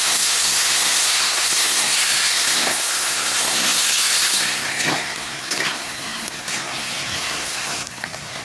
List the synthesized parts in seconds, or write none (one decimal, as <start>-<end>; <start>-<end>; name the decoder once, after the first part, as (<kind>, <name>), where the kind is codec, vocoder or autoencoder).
0.0-8.4 (codec, SNAC)